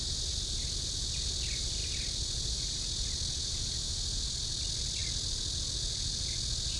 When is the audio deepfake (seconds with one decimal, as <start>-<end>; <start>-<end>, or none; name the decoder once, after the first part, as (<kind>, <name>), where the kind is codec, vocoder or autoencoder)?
none